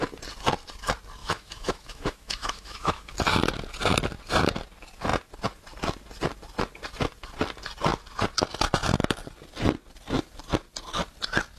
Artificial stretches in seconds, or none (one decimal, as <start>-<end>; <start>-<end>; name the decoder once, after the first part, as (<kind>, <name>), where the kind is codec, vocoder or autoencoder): 1.2-3.1 (autoencoder, DAC-VAE)